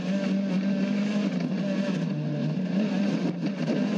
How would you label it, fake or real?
real